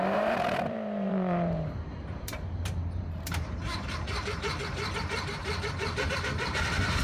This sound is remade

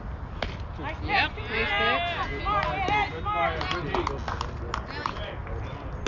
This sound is recorded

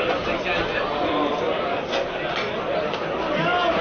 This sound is recorded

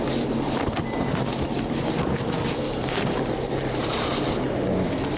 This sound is remade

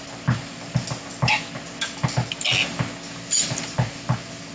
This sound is recorded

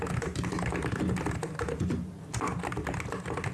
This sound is recorded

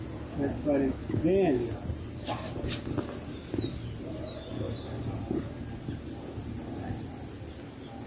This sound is recorded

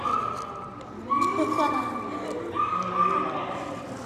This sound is recorded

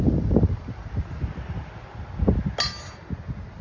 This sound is recorded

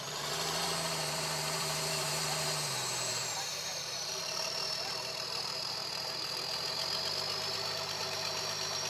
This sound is remade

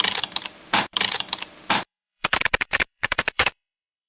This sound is remade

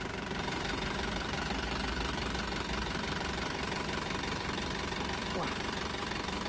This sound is remade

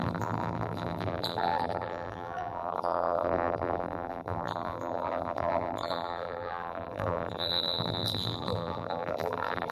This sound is remade